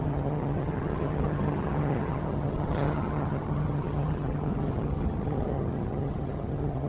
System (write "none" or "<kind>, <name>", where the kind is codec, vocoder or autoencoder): vocoder, HiFi-GAN